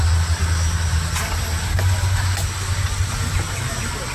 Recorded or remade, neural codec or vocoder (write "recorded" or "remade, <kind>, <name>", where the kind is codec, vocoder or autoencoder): recorded